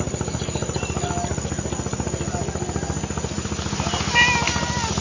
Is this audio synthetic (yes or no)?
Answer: no